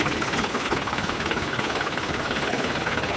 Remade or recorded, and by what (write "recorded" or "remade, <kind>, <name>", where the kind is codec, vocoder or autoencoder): remade, codec, HILCodec